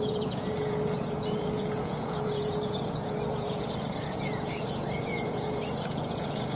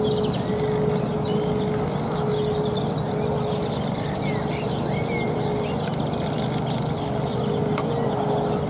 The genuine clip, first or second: second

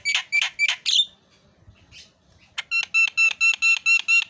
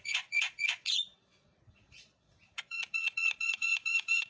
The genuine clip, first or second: first